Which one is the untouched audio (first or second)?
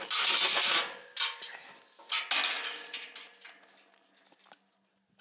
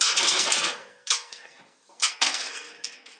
first